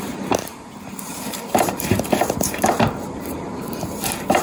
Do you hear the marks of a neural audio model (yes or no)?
yes